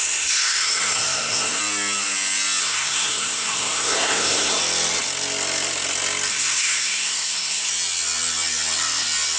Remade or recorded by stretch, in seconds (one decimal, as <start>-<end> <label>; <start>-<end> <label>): 0.0-1.6 remade; 1.6-2.6 recorded; 2.6-4.6 remade; 4.6-6.3 recorded; 6.3-7.7 remade; 7.7-9.4 recorded